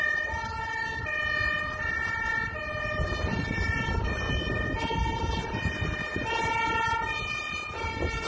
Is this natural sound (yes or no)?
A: yes